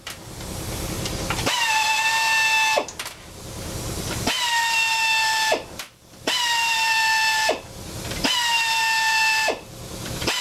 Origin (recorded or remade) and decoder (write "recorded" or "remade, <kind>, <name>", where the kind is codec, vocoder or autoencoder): remade, vocoder, BigVGAN v2